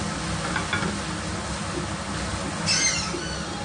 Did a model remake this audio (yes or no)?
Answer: no